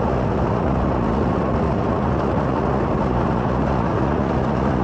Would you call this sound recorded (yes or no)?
no